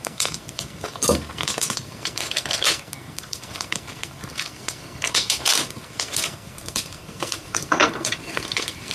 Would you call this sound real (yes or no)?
no